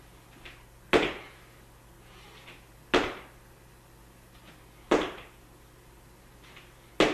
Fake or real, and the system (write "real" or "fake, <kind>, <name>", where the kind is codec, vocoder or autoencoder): real